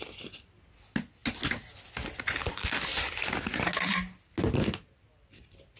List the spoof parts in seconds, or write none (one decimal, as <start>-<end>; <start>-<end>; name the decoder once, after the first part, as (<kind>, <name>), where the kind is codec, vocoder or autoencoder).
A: none